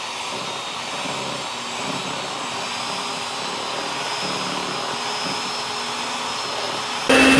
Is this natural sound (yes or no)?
yes